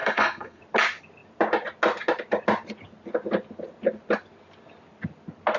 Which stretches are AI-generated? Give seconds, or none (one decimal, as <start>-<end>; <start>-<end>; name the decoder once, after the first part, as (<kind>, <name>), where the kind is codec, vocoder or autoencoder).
0.0-0.6 (codec, SNAC)